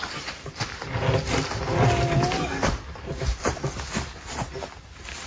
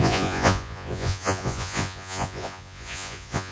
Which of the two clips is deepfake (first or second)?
second